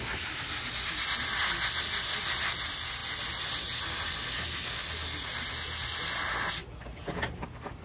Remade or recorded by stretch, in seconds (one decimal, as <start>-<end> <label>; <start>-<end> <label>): 0.0-7.8 recorded

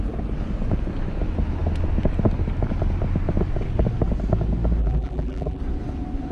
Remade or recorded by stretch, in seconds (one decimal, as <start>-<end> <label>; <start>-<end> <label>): 0.0-4.8 recorded; 4.8-5.6 remade; 5.6-6.3 recorded

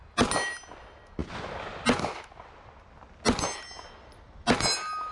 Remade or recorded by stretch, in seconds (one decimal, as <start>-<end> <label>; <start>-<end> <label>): 0.0-5.1 recorded